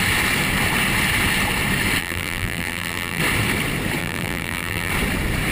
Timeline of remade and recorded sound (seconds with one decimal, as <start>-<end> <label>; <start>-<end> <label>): 0.0-2.0 recorded; 2.0-3.2 remade; 3.2-4.0 recorded; 4.0-4.9 remade; 4.9-5.5 recorded